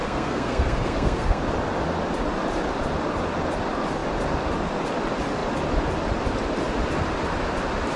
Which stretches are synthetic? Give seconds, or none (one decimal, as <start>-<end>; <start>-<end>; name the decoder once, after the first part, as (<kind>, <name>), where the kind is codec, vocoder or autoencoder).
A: 0.0-1.4 (codec, SNAC)